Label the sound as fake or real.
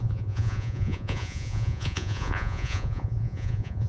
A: fake